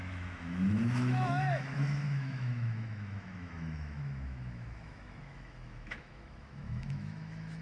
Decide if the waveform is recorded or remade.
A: remade